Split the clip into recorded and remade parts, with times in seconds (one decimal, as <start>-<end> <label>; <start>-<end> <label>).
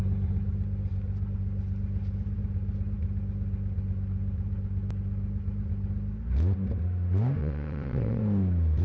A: 0.0-7.4 recorded; 7.4-8.2 remade; 8.2-8.8 recorded